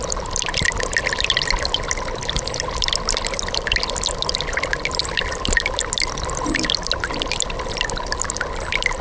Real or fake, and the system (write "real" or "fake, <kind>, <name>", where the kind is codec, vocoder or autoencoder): real